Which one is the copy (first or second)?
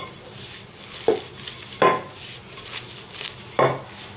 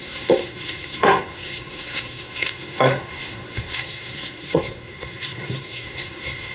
second